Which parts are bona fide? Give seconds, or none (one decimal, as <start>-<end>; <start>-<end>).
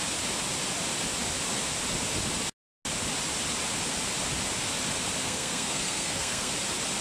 0.0-5.2; 6.5-7.0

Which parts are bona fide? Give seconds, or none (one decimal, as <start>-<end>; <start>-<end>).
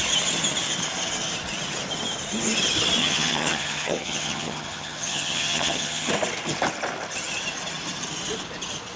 0.0-3.0; 6.1-9.0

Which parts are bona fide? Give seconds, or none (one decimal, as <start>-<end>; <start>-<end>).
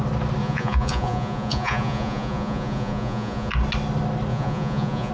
0.0-0.4; 3.5-4.3